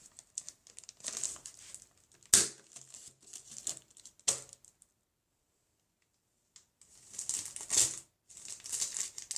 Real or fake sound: real